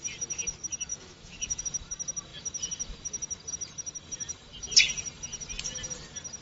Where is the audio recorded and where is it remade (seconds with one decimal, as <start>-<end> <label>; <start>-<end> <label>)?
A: 0.0-0.9 recorded; 0.9-1.6 remade; 1.6-6.4 recorded